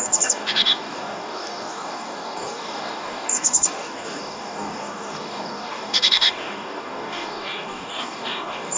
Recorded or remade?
remade